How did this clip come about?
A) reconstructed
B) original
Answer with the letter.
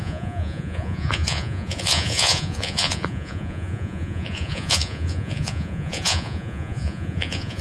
A